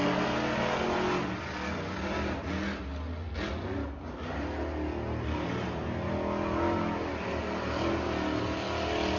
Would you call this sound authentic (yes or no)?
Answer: yes